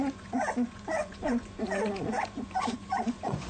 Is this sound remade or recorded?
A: remade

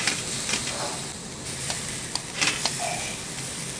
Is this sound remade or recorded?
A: recorded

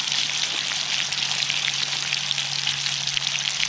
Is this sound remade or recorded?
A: recorded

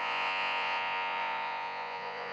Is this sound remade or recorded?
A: remade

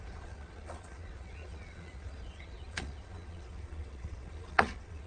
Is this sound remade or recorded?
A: remade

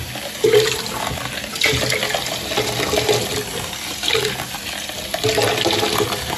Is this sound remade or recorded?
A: recorded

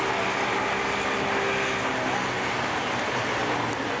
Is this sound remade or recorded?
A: recorded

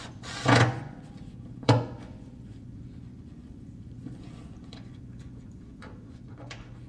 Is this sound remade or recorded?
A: remade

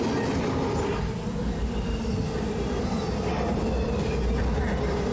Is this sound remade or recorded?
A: recorded